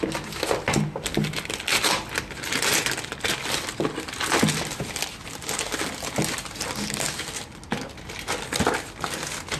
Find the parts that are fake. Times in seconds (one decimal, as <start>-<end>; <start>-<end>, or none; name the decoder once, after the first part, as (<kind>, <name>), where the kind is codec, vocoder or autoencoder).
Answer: 1.1-2.3 (vocoder, BigVGAN v2)

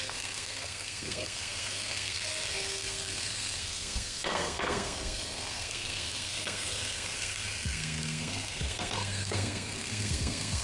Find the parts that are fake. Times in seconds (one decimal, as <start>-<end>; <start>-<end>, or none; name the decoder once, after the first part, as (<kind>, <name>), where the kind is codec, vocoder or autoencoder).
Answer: 0.0-10.6 (codec, SNAC)

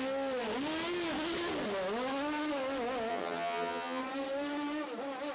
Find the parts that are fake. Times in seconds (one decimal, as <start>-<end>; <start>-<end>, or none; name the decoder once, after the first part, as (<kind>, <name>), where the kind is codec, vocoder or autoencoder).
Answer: 3.1-4.0 (vocoder, HiFi-GAN)

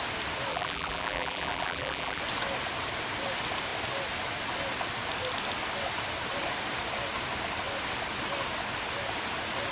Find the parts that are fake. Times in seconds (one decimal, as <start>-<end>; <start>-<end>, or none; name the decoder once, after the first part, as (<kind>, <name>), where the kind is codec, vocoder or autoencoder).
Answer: 0.5-2.2 (vocoder, BigVGAN v2)

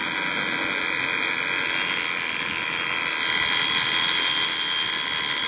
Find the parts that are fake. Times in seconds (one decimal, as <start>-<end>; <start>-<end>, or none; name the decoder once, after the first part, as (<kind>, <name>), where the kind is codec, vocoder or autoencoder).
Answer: none